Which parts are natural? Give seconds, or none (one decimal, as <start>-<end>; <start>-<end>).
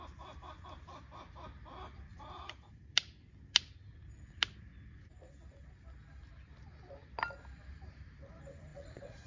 0.0-2.1; 2.8-8.7